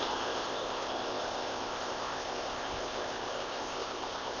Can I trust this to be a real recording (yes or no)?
no